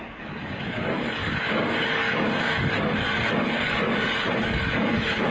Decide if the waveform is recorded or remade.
remade